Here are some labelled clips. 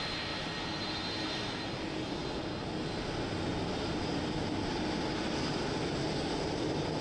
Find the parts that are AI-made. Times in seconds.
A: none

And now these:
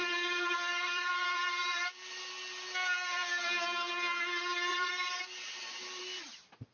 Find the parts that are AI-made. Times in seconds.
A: 0.0-2.2; 4.7-6.0

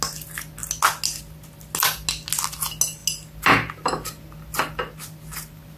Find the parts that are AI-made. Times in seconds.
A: none

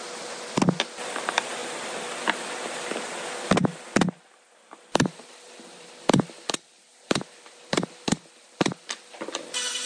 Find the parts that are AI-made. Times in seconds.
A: 6.8-9.9

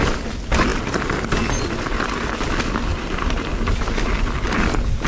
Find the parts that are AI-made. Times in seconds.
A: 2.9-3.5

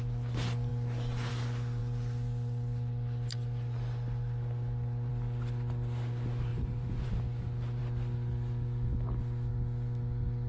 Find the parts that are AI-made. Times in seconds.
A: 6.5-7.1

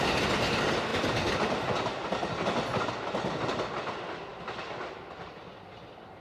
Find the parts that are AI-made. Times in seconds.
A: none